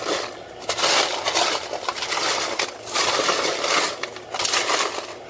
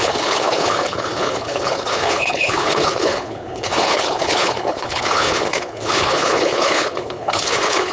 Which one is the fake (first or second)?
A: second